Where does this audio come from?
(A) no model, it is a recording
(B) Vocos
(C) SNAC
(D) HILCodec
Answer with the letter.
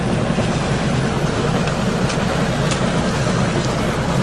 A